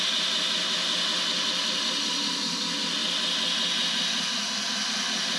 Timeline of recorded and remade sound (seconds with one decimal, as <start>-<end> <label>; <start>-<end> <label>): 0.0-5.4 recorded